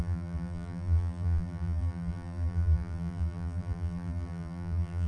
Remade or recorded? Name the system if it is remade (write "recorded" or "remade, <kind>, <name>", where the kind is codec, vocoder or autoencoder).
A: remade, vocoder, BigVGAN v2